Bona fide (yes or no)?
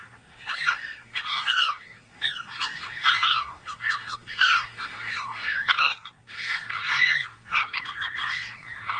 no